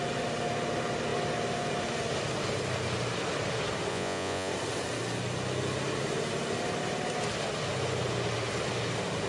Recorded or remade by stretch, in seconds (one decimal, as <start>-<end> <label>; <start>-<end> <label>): 0.0-3.9 recorded; 3.9-4.5 remade; 4.5-9.3 recorded